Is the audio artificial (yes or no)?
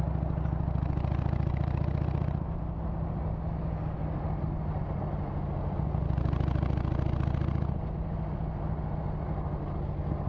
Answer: no